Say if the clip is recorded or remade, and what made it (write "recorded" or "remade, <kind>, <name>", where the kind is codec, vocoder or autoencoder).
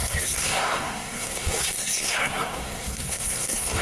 remade, codec, SNAC